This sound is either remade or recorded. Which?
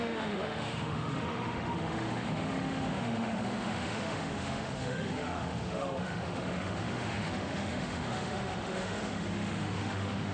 remade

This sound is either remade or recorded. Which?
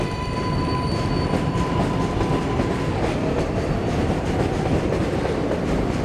recorded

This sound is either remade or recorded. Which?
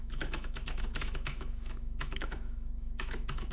remade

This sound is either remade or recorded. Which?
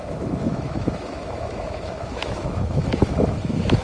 remade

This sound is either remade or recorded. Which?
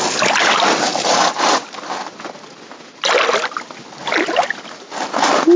recorded